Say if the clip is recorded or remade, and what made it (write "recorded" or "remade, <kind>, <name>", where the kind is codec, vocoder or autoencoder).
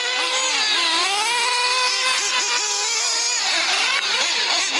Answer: recorded